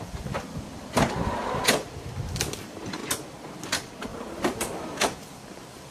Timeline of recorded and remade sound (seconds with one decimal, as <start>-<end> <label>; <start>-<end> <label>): 0.0-3.0 remade; 3.0-3.5 recorded; 3.5-5.9 remade